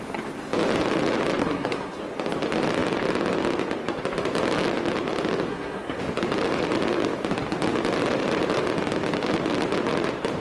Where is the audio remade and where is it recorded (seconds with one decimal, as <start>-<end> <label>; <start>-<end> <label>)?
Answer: 0.0-1.4 recorded; 1.4-2.0 remade; 2.0-5.5 recorded; 5.5-6.0 remade; 6.0-10.4 recorded